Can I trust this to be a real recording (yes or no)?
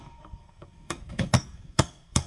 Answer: no